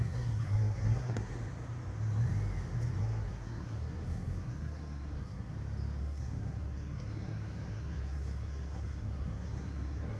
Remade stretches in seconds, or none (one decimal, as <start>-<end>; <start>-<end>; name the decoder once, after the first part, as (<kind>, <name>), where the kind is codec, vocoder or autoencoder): 0.0-1.3 (codec, SNAC); 3.0-5.5; 6.0-10.2